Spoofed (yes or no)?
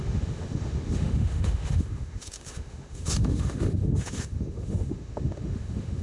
yes